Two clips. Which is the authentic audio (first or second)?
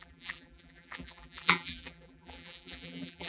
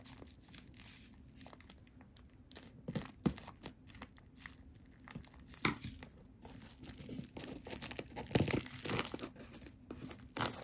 second